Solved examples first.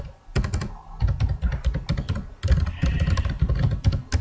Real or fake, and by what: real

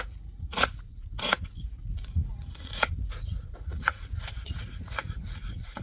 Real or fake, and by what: fake, vocoder, Vocos